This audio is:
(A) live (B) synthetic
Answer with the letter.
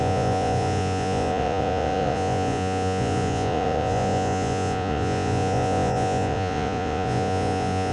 B